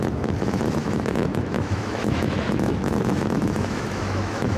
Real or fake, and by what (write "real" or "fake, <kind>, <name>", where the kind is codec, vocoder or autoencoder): fake, autoencoder, DAC-VAE